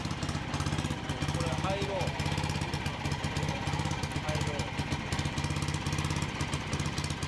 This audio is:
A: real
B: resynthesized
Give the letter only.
A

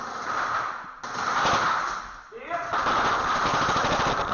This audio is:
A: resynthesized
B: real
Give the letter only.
B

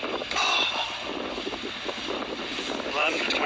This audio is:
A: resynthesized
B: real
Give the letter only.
A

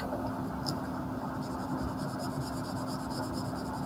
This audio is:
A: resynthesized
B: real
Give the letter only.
B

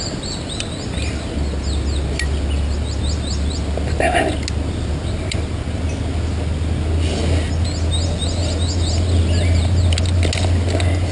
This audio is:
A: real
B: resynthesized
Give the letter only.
A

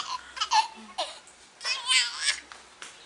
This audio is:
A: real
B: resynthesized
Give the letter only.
A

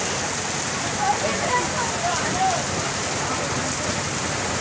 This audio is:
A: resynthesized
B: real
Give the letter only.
B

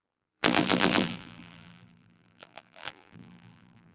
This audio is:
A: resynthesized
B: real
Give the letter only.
A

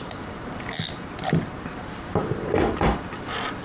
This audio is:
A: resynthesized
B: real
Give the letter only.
A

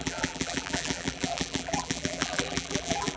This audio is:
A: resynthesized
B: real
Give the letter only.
A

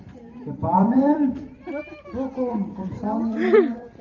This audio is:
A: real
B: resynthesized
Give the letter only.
B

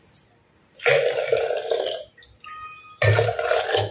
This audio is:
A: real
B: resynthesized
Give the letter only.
A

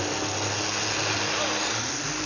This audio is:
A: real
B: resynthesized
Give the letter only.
A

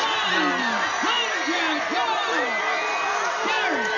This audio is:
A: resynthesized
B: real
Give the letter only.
B